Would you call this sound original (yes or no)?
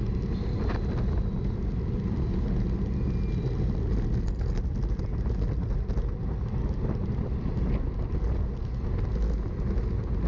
yes